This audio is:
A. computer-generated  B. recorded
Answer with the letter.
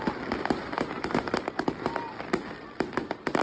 B